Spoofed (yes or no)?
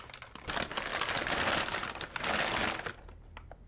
no